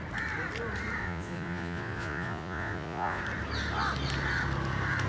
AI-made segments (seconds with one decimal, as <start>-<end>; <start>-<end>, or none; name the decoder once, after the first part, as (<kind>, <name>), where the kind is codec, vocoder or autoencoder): 1.0-3.2 (vocoder, Vocos)